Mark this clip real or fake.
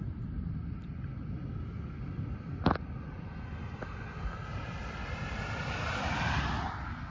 real